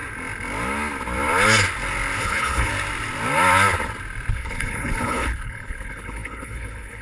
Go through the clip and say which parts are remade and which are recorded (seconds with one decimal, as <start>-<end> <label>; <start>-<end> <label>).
0.0-2.2 recorded; 2.2-2.7 remade; 2.7-4.3 recorded; 4.3-7.0 remade